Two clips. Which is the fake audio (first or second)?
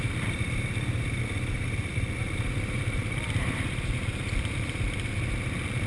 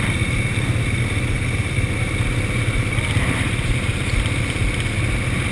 first